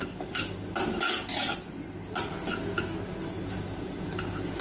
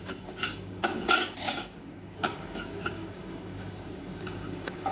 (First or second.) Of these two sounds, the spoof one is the second